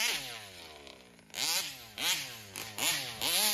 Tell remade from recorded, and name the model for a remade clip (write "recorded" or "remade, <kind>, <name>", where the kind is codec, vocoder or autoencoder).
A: recorded